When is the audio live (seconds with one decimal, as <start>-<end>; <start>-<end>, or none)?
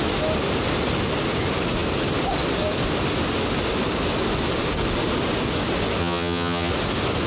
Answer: 0.0-6.0; 6.7-7.3